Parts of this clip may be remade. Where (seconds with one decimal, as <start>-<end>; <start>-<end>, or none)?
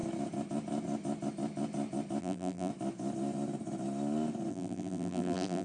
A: 2.2-2.7; 4.5-5.6